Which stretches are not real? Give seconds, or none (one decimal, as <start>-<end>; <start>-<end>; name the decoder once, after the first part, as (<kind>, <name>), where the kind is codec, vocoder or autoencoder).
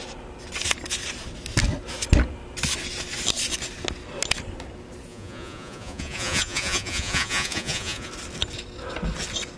5.1-8.1 (vocoder, Vocos)